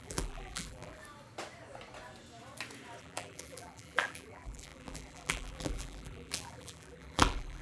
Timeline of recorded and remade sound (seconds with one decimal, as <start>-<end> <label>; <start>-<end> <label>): 0.0-1.0 remade; 1.0-3.0 recorded; 3.0-7.6 remade

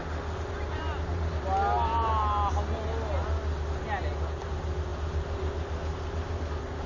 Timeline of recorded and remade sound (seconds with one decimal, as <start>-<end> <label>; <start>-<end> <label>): 0.0-6.9 recorded

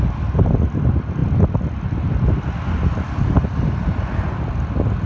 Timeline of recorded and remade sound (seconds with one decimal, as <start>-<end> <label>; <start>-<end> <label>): 0.0-5.1 recorded

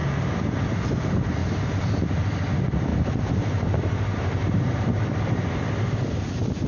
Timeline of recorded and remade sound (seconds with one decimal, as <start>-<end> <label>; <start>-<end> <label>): 0.0-1.4 recorded; 1.4-2.0 remade; 2.0-2.9 recorded; 2.9-5.6 remade; 5.6-6.7 recorded